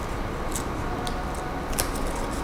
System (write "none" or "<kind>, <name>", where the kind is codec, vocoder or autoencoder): none